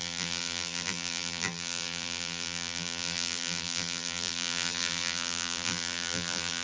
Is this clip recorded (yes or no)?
no